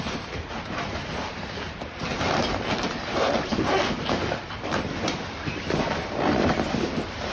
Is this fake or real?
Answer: fake